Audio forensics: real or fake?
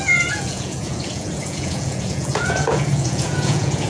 fake